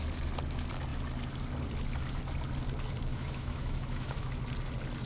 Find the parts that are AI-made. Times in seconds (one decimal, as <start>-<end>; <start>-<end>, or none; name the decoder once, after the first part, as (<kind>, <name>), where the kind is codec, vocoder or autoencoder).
3.1-4.3 (autoencoder, DAC-VAE)

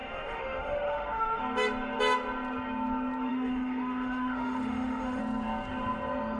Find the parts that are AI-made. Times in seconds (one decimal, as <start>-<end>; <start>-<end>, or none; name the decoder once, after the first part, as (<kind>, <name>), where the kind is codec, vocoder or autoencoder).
0.0-1.4 (autoencoder, DAC-VAE); 3.3-5.2